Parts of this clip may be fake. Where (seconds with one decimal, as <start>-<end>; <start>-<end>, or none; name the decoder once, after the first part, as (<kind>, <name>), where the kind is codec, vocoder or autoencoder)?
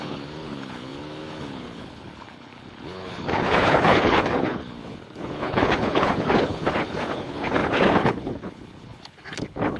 0.0-9.8 (codec, HILCodec)